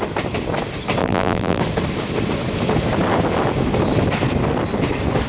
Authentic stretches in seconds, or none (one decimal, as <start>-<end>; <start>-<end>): 0.0-1.0; 1.6-5.3